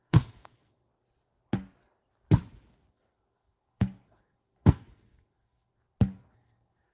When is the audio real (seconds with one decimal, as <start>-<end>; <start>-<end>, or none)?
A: 0.9-2.9; 5.7-6.3